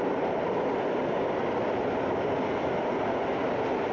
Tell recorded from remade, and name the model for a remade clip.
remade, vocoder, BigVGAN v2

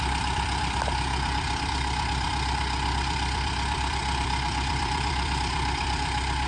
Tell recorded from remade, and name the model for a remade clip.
remade, vocoder, BigVGAN v2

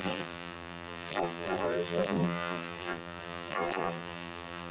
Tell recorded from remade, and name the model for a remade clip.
remade, vocoder, BigVGAN v2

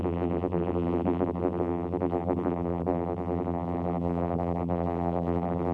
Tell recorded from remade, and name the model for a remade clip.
remade, vocoder, BigVGAN v2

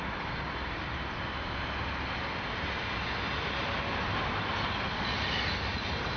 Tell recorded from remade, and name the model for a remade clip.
recorded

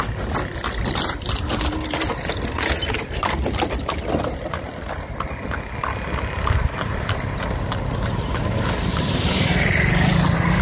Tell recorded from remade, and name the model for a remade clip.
recorded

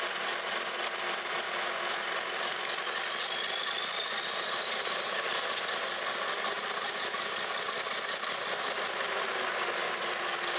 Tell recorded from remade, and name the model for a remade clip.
recorded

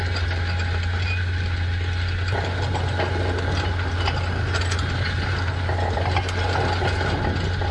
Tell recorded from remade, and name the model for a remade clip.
recorded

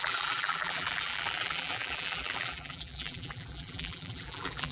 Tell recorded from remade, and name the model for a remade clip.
remade, vocoder, BigVGAN v2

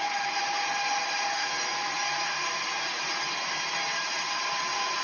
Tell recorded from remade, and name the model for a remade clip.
remade, vocoder, BigVGAN v2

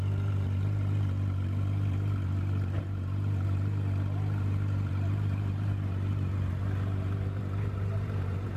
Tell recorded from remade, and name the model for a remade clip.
remade, vocoder, BigVGAN v2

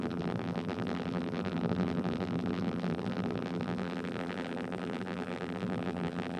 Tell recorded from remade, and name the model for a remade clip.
remade, vocoder, BigVGAN v2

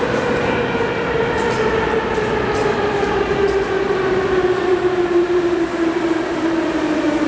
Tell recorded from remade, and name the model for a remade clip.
recorded